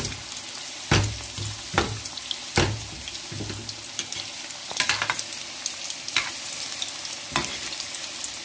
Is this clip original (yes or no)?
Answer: yes